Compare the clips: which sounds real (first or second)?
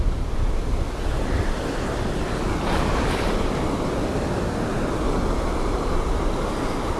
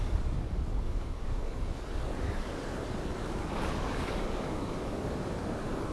first